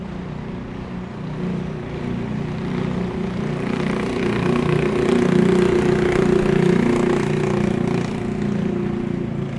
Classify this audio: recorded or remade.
recorded